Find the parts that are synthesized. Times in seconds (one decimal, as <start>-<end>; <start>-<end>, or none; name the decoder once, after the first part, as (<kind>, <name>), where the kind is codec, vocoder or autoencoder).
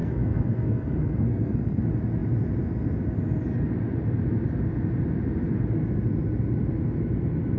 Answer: 0.0-1.8 (codec, SNAC)